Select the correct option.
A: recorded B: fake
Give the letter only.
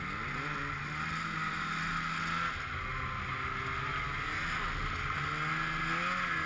A